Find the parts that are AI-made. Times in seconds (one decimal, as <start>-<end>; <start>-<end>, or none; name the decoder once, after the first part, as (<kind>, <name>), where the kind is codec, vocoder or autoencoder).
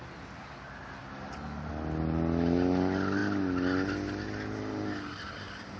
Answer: 1.0-1.7 (vocoder, BigVGAN v2)